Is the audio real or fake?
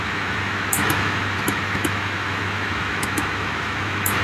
fake